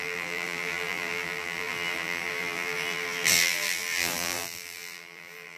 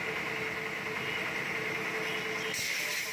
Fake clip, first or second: first